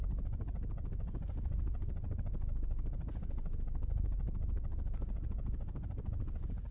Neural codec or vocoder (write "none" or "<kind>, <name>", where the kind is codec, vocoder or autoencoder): none